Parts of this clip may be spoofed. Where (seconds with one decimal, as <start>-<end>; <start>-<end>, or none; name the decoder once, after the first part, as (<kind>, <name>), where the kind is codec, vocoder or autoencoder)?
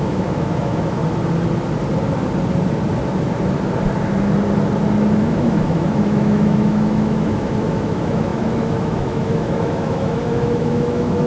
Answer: 0.0-1.0 (autoencoder, DAC-VAE); 5.2-11.3